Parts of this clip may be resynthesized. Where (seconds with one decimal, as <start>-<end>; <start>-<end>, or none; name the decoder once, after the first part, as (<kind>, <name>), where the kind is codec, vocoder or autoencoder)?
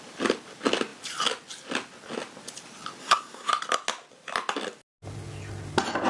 3.0-3.5 (codec, SNAC)